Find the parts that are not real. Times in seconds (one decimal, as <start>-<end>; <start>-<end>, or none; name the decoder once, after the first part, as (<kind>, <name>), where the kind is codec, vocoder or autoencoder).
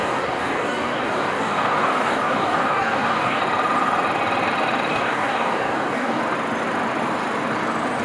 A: 0.0-3.4 (codec, DAC); 4.9-6.2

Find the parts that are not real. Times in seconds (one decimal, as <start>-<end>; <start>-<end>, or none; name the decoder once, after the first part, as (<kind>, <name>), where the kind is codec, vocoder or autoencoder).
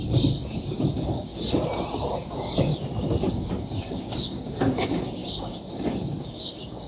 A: 0.0-1.3 (codec, DAC); 2.3-2.7; 3.3-6.9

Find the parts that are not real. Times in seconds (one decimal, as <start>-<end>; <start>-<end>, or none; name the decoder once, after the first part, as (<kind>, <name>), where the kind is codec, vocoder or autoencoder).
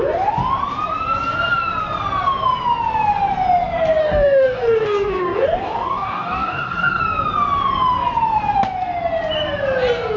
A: 4.0-7.0 (codec, DAC)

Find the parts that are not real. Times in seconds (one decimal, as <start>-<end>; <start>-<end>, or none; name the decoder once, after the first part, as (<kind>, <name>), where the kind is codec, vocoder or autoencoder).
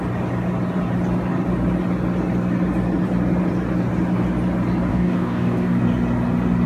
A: 4.9-5.8 (codec, DAC)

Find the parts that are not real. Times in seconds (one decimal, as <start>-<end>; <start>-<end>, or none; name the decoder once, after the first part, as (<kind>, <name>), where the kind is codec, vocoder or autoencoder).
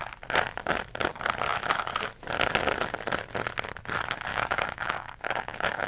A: 4.3-5.9 (codec, DAC)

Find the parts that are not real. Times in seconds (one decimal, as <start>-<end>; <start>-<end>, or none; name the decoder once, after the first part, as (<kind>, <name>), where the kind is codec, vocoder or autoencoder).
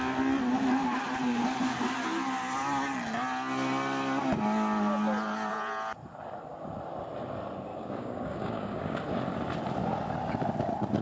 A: 7.7-9.0 (codec, DAC)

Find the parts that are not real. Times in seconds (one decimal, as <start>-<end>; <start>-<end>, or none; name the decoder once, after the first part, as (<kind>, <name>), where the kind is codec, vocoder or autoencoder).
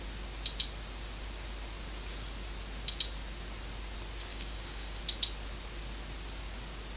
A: 4.3-5.0 (codec, DAC)